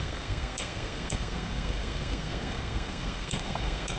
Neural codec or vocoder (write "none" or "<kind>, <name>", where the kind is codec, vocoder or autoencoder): codec, SNAC